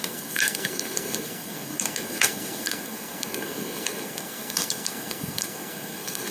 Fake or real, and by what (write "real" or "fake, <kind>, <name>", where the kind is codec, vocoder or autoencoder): fake, codec, SNAC